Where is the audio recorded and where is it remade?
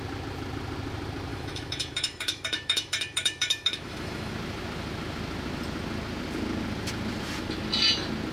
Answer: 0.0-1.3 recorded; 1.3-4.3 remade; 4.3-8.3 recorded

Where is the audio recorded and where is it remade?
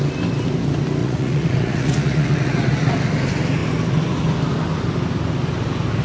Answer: 0.0-1.0 recorded; 1.0-2.8 remade; 2.8-6.0 recorded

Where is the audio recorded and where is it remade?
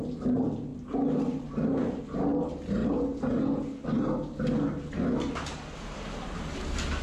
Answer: 0.0-7.0 recorded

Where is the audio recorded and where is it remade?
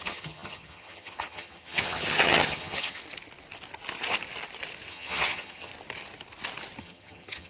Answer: 0.0-3.0 remade; 3.0-4.9 recorded; 4.9-5.7 remade; 5.7-6.8 recorded; 6.8-7.5 remade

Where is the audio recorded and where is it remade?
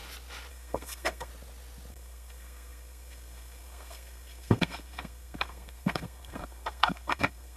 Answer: 0.0-0.5 recorded; 0.5-1.3 remade; 1.3-1.9 recorded; 1.9-7.6 remade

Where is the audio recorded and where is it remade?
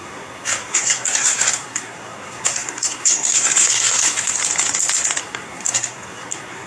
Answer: 0.0-4.4 remade; 4.4-5.2 recorded; 5.2-6.7 remade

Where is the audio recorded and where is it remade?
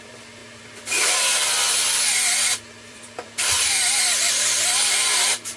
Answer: 0.0-5.6 remade